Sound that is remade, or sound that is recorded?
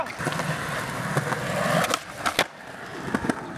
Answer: recorded